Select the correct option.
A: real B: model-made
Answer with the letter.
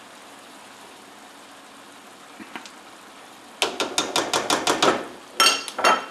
A